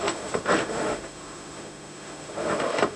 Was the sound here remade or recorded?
remade